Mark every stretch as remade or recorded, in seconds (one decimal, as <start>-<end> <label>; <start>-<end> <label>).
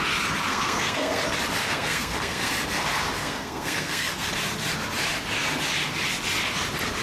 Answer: 0.0-0.5 recorded; 0.5-1.2 remade; 1.2-1.6 recorded; 1.6-2.5 remade; 2.5-3.2 recorded; 3.2-4.3 remade; 4.3-7.0 recorded